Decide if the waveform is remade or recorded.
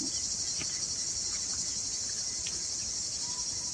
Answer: recorded